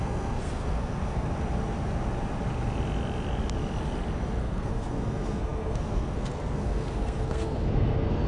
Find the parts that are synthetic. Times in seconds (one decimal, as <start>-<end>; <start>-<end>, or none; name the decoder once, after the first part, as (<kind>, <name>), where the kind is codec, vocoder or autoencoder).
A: 0.0-1.3 (codec, SNAC); 4.4-8.3